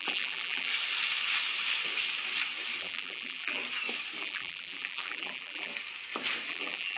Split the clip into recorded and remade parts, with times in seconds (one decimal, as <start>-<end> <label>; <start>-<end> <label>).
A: 0.0-0.7 remade; 0.7-2.8 recorded; 2.8-3.6 remade; 3.6-4.2 recorded; 4.2-5.7 remade; 5.7-6.5 recorded; 6.5-7.0 remade